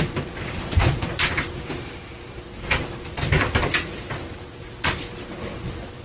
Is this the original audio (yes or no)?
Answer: yes